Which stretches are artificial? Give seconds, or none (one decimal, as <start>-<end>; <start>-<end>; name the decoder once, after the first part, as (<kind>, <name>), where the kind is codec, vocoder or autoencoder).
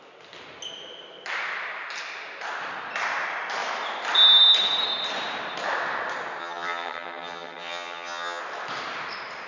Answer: 6.4-8.4 (vocoder, HiFi-GAN)